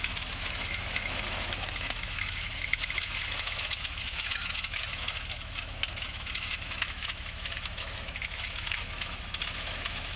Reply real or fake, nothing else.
fake